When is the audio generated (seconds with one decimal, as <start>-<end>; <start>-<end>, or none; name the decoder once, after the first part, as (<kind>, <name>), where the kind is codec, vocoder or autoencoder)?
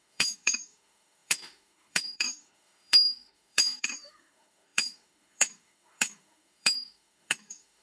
0.0-7.8 (autoencoder, DAC-VAE)